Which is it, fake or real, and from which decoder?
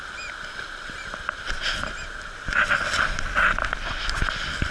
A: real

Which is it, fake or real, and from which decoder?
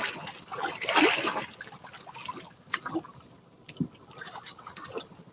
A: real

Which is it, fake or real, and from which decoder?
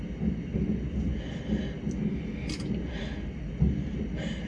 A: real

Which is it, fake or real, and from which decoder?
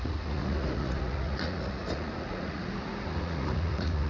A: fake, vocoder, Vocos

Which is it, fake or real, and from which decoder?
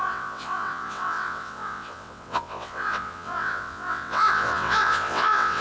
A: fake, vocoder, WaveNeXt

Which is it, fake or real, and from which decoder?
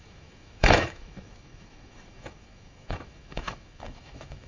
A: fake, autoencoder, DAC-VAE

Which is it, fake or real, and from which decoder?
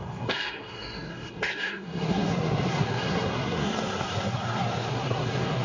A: fake, codec, SNAC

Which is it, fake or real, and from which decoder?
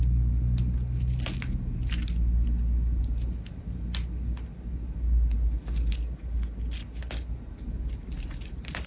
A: real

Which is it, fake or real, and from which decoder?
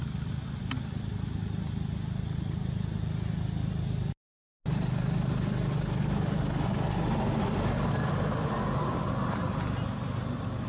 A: real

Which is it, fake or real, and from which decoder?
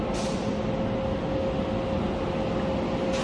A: real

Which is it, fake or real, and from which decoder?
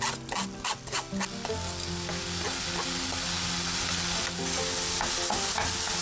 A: real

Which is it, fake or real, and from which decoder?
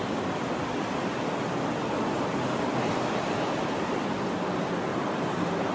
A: real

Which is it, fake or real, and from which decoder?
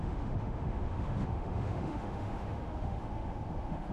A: fake, autoencoder, DAC-VAE